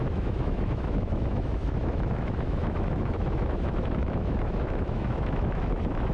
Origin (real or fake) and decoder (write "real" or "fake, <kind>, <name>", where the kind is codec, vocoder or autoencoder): fake, autoencoder, DAC-VAE